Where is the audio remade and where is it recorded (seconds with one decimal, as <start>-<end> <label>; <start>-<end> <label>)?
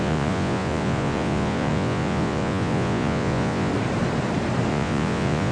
0.0-3.7 remade; 3.7-4.7 recorded; 4.7-5.5 remade